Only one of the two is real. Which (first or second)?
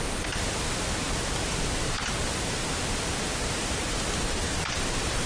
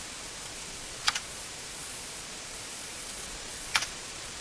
first